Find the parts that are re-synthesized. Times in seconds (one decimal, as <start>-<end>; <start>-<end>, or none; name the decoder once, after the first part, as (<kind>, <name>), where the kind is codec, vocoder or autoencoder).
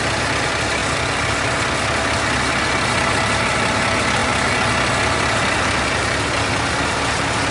none